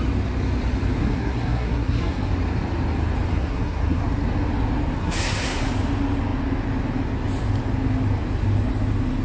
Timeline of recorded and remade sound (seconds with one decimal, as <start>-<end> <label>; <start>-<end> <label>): 0.0-1.0 recorded; 1.0-2.3 remade; 2.3-3.3 recorded; 3.3-4.0 remade; 4.0-5.0 recorded; 5.0-5.7 remade; 5.7-9.2 recorded